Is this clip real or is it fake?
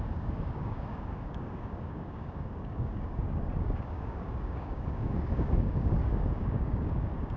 fake